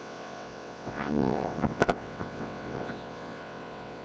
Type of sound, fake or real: fake